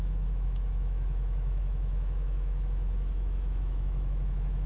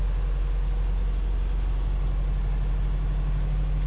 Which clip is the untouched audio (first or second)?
second